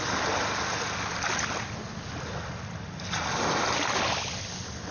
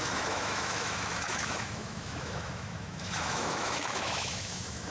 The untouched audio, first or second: first